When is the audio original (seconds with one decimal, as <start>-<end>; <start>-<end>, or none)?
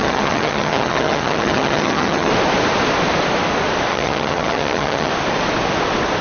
2.3-3.9; 5.1-6.2